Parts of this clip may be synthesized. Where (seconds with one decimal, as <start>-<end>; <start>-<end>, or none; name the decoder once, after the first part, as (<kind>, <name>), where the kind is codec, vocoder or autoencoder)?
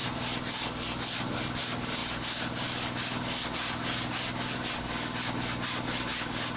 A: none